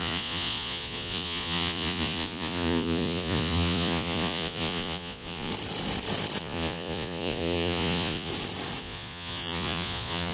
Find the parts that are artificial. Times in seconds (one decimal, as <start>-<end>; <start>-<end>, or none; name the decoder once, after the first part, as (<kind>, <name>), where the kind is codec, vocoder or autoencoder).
0.0-5.5 (vocoder, Vocos); 6.4-8.3; 8.8-10.3